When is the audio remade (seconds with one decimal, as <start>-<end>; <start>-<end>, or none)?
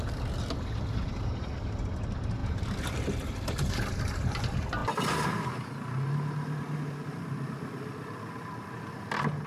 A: none